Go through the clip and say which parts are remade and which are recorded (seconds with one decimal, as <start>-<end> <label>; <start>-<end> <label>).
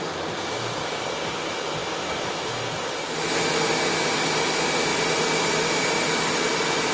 0.0-6.9 recorded